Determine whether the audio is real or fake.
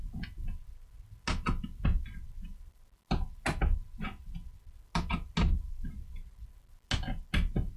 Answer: real